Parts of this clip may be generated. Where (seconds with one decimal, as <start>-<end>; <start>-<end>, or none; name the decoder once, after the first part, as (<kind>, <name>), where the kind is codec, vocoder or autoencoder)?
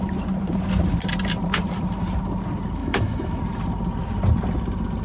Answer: 2.8-3.4 (autoencoder, DAC-VAE)